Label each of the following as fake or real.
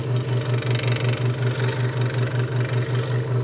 real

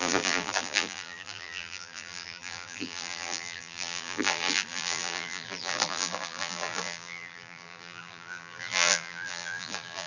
fake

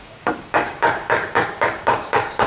fake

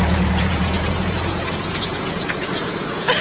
fake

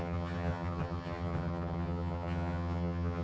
fake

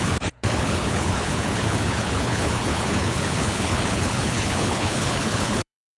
fake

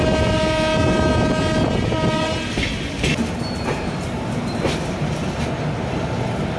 real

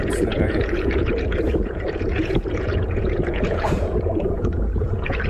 fake